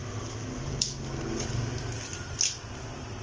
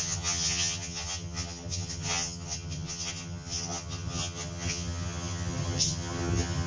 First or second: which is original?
first